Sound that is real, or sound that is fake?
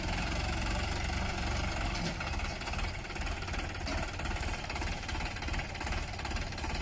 real